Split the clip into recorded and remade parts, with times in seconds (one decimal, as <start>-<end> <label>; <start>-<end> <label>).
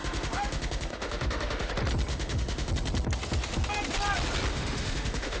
0.0-1.7 remade; 1.7-2.1 recorded; 2.1-2.7 remade; 2.7-4.5 recorded; 4.5-5.4 remade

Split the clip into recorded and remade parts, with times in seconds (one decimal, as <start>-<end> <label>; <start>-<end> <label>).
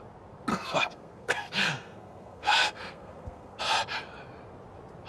0.0-0.5 recorded; 0.5-3.6 remade; 3.6-5.1 recorded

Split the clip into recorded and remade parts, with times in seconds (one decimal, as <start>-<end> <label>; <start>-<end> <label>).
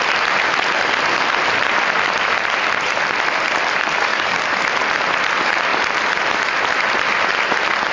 0.0-4.1 recorded; 4.1-4.6 remade; 4.6-7.9 recorded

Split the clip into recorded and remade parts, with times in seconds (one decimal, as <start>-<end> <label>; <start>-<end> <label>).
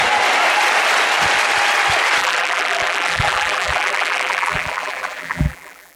0.0-2.2 recorded; 2.2-6.0 remade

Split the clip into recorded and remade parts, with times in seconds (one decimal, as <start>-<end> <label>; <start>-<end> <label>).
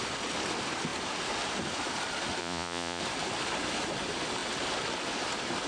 0.0-2.4 recorded; 2.4-3.0 remade; 3.0-5.7 recorded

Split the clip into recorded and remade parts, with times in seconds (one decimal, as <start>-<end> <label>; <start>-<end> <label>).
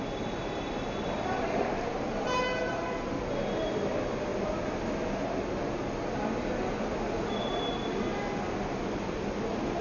0.0-1.9 recorded; 1.9-2.7 remade; 2.7-9.8 recorded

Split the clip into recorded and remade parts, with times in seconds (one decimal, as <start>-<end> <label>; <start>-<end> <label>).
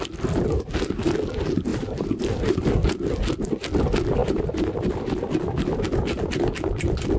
0.0-1.7 recorded; 1.7-2.6 remade; 2.6-4.2 recorded; 4.2-4.7 remade; 4.7-7.2 recorded